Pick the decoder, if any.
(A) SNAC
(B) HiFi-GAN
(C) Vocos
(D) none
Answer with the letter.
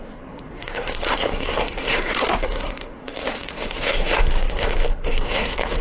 A